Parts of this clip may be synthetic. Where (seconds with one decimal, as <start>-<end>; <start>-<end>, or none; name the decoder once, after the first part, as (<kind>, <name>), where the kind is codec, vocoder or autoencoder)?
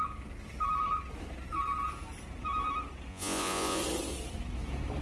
3.1-3.8 (vocoder, Vocos)